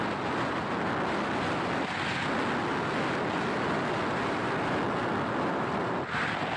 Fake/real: real